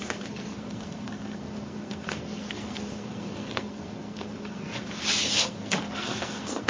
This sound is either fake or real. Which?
fake